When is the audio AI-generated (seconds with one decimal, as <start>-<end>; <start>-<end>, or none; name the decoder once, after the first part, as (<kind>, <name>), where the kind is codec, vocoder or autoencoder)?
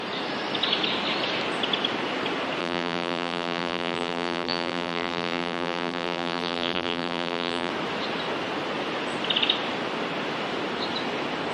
2.6-7.7 (vocoder, BigVGAN v2)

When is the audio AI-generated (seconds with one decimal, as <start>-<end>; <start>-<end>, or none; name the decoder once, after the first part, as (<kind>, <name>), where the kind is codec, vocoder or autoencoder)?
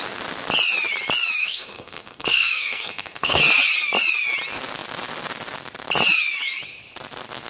1.4-3.4 (codec, SNAC)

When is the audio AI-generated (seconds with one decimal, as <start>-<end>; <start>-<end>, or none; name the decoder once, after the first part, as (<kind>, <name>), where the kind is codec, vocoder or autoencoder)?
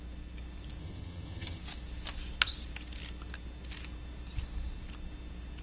0.8-1.6 (vocoder, HiFi-GAN)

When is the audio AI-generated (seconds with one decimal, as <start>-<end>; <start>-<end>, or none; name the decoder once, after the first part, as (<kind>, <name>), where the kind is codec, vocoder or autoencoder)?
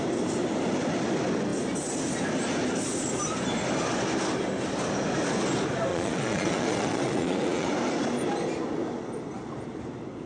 5.9-7.7 (vocoder, Vocos)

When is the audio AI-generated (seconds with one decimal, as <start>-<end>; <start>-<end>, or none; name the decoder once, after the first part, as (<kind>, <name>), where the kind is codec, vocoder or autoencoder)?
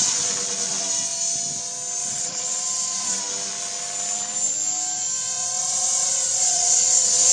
2.0-3.2 (vocoder, WaveNeXt); 5.2-7.3